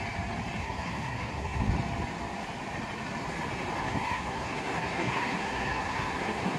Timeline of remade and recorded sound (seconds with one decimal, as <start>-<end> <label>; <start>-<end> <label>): 0.0-0.6 recorded; 0.6-1.7 remade; 1.7-3.8 recorded; 3.8-6.6 remade